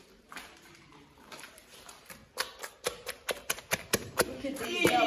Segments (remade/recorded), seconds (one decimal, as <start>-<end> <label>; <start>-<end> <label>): 0.0-2.2 remade; 2.2-3.9 recorded; 3.9-5.1 remade